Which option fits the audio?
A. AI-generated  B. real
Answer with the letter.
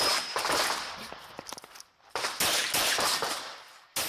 B